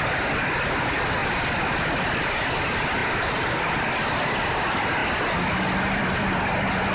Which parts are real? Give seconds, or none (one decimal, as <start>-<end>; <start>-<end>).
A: 0.0-6.9